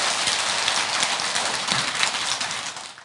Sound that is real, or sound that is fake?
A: real